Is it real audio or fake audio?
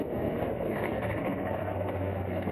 fake